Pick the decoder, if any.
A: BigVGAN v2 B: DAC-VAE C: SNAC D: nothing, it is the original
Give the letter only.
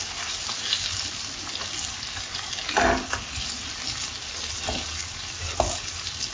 D